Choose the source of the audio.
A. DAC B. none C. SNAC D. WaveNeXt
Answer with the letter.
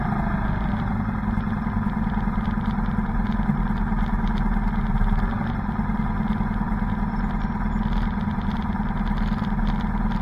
B